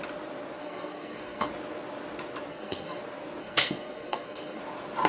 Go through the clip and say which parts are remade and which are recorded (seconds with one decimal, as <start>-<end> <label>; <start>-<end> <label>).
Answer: 0.0-0.6 recorded; 0.6-1.5 remade; 1.5-2.5 recorded; 2.5-3.0 remade; 3.0-3.4 recorded; 3.4-4.6 remade; 4.6-5.1 recorded